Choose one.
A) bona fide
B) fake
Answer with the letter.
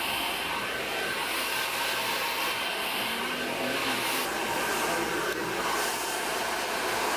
A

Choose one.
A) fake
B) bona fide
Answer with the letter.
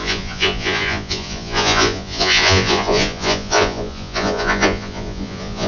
A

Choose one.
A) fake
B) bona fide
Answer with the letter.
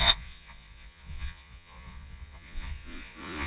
A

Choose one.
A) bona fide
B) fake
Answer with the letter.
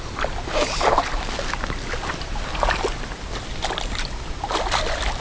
A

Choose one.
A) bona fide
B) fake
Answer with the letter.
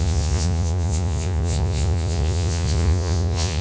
B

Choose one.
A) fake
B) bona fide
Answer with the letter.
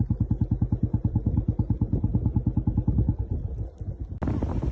B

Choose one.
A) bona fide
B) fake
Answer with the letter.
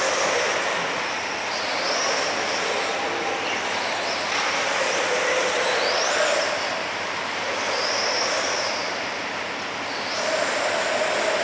A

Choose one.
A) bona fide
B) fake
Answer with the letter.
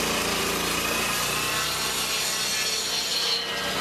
A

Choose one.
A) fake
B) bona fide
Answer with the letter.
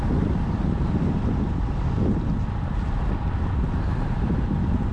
B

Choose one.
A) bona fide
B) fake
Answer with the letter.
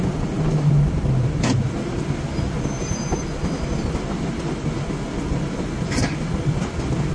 A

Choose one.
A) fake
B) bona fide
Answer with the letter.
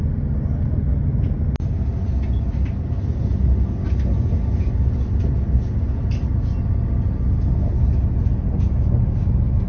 B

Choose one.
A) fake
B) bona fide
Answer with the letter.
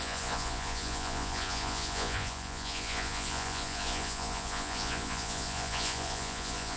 A